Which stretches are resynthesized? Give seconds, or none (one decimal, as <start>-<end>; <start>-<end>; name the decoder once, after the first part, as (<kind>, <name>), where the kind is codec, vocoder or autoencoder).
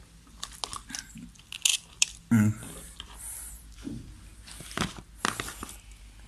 1.7-3.5 (vocoder, BigVGAN v2)